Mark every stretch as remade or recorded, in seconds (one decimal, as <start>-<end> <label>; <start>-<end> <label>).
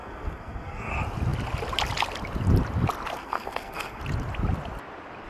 0.0-0.9 remade; 0.9-3.1 recorded; 3.1-4.0 remade; 4.0-5.3 recorded